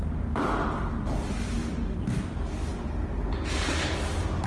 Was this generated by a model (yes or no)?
no